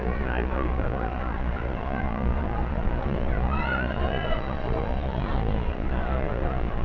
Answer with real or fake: fake